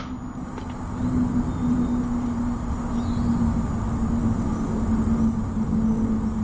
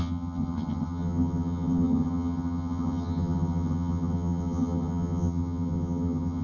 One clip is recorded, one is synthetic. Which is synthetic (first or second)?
second